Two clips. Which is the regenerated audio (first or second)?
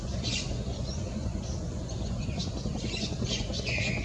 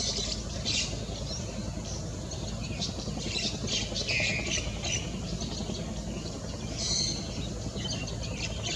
first